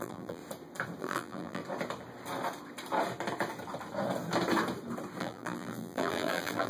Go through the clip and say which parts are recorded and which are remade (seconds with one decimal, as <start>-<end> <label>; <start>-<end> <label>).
0.0-0.4 remade; 0.4-1.0 recorded; 1.0-1.6 remade; 1.6-5.2 recorded; 5.2-6.7 remade